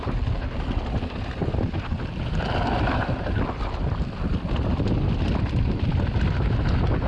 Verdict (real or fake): real